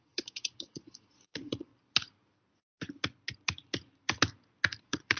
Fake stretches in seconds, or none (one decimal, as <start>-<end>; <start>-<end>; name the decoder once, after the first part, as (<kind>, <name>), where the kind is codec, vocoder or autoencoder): 0.0-1.7 (vocoder, Vocos); 4.8-5.2